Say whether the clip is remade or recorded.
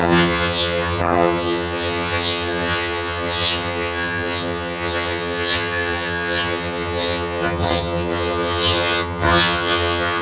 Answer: remade